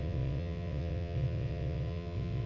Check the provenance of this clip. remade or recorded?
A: remade